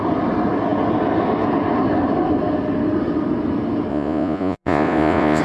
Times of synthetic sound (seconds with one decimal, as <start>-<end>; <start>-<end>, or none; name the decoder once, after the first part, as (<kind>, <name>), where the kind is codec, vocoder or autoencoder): 3.9-5.4 (vocoder, Vocos)

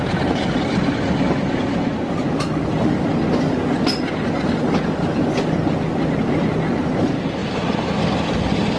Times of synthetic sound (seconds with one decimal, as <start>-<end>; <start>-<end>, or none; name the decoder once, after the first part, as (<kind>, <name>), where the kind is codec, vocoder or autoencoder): none

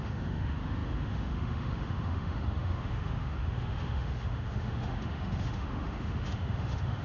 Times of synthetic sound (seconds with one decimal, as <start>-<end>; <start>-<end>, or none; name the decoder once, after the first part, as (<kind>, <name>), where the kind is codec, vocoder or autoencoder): 0.0-7.0 (autoencoder, DAC-VAE)

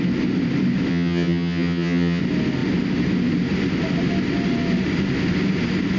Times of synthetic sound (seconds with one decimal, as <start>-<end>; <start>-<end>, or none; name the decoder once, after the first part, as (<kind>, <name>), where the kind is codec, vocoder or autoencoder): 0.9-2.2 (vocoder, HiFi-GAN)

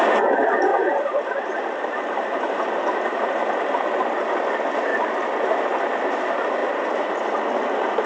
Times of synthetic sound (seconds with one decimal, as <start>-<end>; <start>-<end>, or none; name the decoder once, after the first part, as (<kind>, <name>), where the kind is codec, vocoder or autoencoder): 0.7-4.0 (vocoder, BigVGAN v2); 4.9-5.8; 6.6-7.1

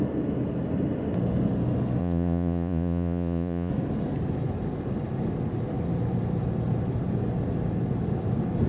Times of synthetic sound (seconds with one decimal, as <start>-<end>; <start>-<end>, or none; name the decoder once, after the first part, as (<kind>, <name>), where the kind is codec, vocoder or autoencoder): 2.0-3.7 (vocoder, Vocos)

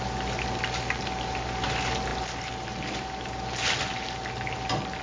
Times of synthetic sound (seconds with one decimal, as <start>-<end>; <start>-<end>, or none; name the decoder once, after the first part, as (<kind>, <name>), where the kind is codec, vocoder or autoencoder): none